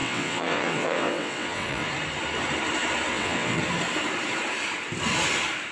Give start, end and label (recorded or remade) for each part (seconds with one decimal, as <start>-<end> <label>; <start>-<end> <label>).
0.0-1.9 remade; 1.9-3.1 recorded; 3.1-3.6 remade; 3.6-5.7 recorded